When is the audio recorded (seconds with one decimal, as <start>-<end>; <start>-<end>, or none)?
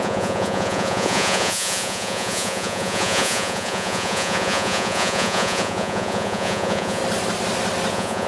7.0-7.9